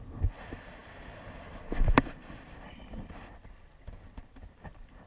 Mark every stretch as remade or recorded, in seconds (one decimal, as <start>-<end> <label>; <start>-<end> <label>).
0.0-5.1 remade